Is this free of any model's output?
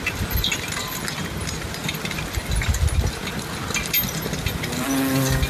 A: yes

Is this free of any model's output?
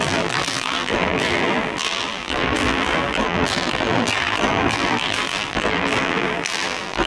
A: no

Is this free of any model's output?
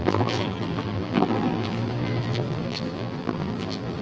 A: no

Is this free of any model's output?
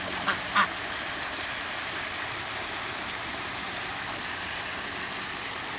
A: yes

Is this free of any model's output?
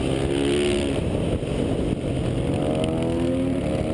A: yes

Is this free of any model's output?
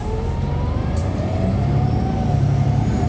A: no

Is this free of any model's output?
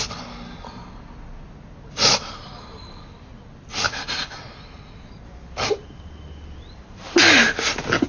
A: yes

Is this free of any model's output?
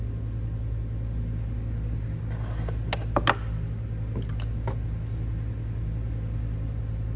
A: yes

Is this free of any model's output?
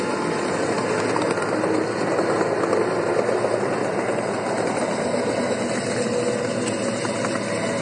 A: yes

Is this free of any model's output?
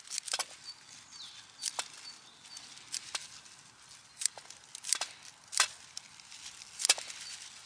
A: yes